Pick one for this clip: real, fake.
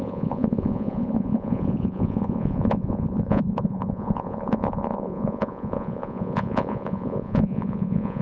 fake